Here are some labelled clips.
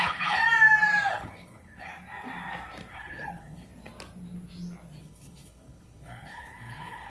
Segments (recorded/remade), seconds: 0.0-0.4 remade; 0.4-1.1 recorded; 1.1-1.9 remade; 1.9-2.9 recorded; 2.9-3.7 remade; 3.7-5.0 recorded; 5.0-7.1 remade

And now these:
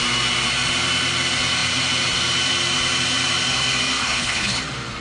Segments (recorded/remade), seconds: 0.0-4.0 recorded; 4.0-4.6 remade; 4.6-5.0 recorded

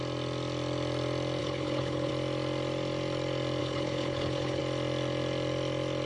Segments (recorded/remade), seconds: 0.0-1.4 recorded; 1.4-2.1 remade; 2.1-3.6 recorded; 3.6-4.6 remade; 4.6-6.1 recorded

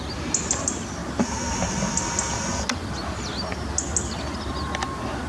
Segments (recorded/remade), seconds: 0.0-5.3 recorded

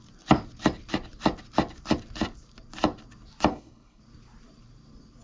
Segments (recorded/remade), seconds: 0.0-3.5 recorded; 3.5-4.0 remade; 4.0-5.2 recorded